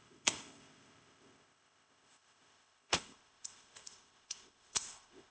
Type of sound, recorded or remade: remade